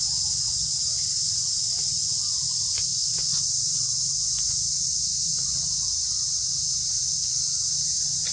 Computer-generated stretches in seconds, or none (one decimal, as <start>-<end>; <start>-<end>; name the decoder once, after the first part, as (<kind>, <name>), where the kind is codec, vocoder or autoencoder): none